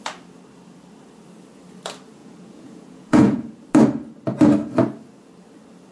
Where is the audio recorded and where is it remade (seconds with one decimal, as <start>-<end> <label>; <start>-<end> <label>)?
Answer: 0.0-2.2 recorded; 2.2-3.5 remade; 3.5-5.9 recorded